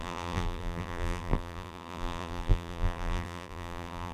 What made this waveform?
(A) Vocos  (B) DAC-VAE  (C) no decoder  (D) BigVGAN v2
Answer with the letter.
D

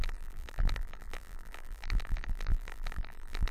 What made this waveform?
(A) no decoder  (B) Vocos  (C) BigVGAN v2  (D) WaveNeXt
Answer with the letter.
C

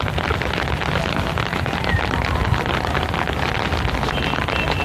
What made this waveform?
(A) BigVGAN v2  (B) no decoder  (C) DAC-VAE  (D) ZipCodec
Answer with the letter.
B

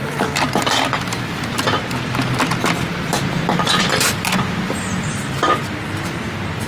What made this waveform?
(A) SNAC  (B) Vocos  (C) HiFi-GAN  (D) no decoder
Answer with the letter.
D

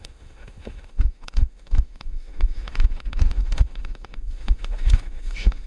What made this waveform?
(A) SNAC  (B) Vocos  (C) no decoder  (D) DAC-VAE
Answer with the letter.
D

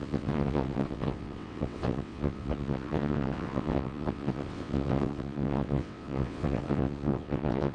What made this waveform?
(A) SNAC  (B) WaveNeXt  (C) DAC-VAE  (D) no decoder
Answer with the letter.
B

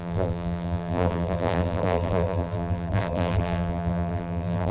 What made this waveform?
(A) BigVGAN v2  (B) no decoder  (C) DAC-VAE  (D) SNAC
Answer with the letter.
A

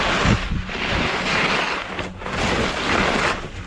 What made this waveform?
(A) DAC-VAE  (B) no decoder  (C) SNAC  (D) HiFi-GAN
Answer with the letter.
B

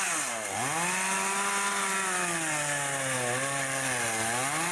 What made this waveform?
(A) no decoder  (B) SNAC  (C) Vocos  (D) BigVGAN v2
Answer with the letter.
A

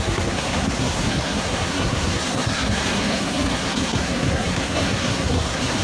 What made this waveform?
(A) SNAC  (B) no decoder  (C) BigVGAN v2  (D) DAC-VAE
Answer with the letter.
A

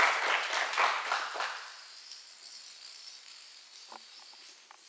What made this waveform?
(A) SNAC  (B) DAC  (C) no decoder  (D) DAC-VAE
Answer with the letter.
C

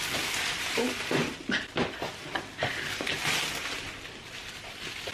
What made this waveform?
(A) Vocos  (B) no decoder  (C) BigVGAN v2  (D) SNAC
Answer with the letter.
C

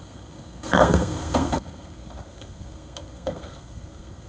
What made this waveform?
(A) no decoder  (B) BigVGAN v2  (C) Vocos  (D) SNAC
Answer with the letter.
D